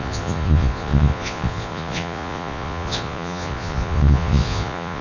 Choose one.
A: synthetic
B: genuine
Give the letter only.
A